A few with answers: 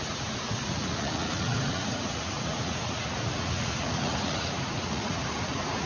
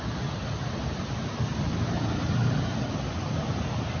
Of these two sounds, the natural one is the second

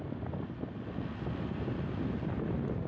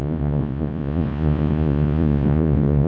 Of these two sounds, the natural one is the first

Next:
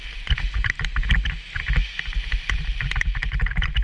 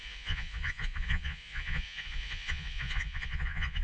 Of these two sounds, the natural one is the first